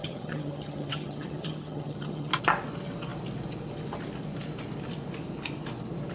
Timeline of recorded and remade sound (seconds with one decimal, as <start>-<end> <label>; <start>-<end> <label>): 0.0-2.3 remade; 2.3-6.1 recorded